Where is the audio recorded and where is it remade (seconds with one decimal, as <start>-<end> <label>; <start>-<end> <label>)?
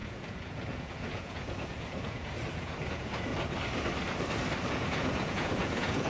0.0-3.3 remade; 3.3-4.7 recorded; 4.7-6.1 remade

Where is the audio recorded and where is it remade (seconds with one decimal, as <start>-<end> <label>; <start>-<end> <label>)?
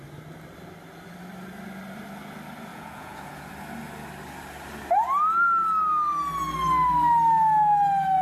0.0-2.7 recorded; 2.7-3.5 remade; 3.5-8.2 recorded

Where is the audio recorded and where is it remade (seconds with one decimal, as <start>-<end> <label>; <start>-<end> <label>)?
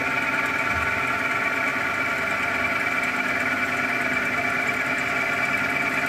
0.0-6.1 recorded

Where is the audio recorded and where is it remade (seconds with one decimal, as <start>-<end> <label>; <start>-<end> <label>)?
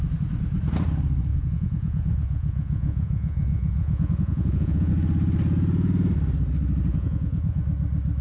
0.0-1.3 recorded; 1.3-4.9 remade; 4.9-6.9 recorded; 6.9-7.6 remade; 7.6-8.2 recorded